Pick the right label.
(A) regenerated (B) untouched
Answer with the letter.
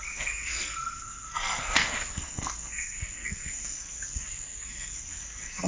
A